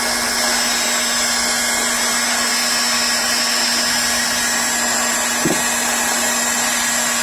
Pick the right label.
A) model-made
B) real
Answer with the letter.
B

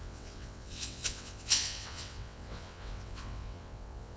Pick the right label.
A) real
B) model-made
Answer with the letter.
B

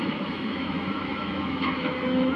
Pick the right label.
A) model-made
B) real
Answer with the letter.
A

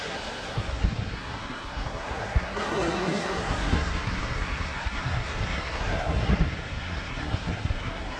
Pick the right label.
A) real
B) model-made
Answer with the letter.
B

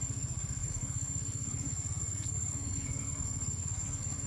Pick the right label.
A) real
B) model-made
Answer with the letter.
B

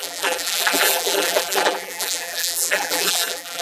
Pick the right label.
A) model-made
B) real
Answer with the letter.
A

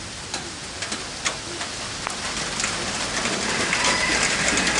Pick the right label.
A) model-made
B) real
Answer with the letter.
B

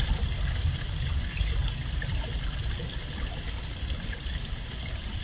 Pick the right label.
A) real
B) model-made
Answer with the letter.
A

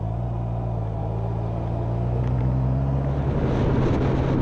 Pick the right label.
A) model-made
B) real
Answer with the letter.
B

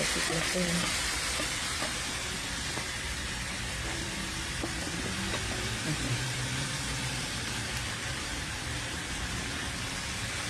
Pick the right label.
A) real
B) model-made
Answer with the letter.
B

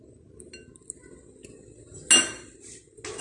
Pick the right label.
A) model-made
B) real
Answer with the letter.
B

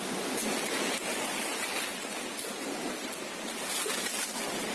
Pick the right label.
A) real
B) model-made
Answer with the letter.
A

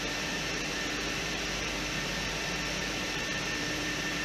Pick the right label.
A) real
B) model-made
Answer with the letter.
B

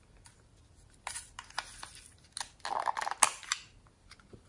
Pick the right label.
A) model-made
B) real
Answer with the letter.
B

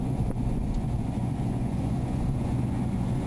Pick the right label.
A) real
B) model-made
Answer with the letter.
B